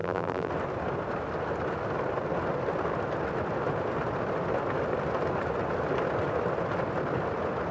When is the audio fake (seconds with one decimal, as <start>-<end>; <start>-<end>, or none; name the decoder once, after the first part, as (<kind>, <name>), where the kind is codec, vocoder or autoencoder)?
0.0-0.5 (vocoder, BigVGAN v2)